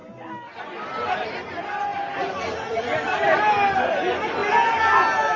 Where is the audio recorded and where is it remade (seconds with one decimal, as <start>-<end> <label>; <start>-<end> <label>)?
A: 0.0-5.4 recorded